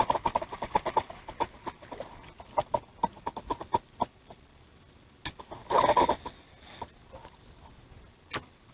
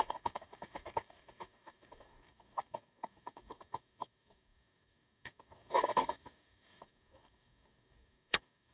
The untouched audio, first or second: first